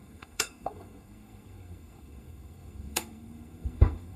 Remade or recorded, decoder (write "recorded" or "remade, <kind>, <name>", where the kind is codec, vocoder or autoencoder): remade, codec, SNAC